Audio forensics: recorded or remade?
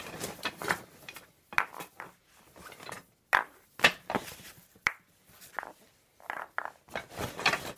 recorded